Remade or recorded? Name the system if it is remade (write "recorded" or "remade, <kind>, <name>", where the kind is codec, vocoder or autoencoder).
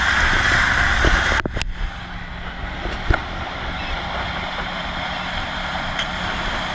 recorded